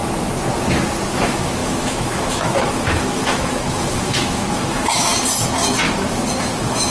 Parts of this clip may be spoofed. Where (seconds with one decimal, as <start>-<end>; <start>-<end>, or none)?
1.2-5.1; 6.4-6.9